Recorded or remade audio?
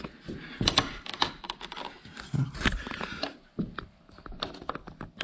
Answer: recorded